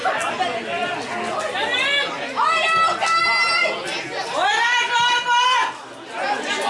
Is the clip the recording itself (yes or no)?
yes